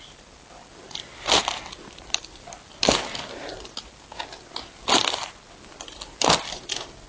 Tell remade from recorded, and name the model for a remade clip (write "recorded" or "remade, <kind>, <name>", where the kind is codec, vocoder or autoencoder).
recorded